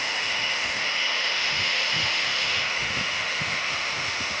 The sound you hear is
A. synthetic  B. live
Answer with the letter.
A